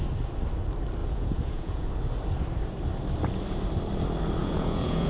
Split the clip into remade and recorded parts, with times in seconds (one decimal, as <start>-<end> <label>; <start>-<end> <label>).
0.0-1.0 recorded; 1.0-1.9 remade; 1.9-4.4 recorded; 4.4-5.1 remade